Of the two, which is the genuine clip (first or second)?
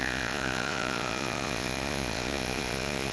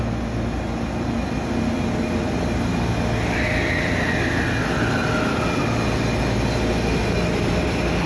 second